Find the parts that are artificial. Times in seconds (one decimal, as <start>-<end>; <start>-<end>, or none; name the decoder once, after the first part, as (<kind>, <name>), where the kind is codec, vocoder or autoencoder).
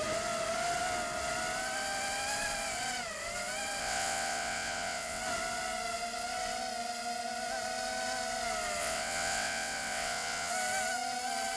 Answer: 3.8-5.2 (vocoder, WaveNeXt); 8.8-10.5